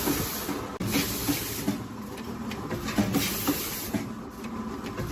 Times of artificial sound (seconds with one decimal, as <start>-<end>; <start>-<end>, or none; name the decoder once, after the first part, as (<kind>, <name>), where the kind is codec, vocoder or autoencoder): none